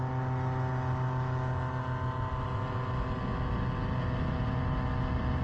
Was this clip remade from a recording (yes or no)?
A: no